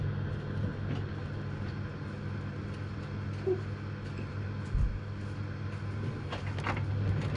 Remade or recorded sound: recorded